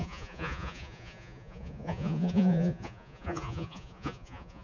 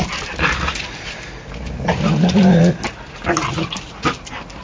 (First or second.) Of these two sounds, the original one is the second